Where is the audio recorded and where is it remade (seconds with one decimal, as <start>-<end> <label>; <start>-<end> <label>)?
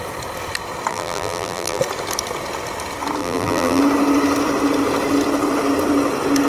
0.0-0.9 recorded; 0.9-1.8 remade; 1.8-3.2 recorded; 3.2-3.8 remade; 3.8-6.5 recorded